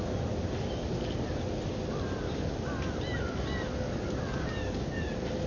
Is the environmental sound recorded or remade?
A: recorded